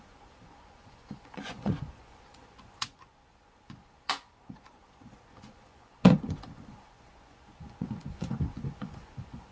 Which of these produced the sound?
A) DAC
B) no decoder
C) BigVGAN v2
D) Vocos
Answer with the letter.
D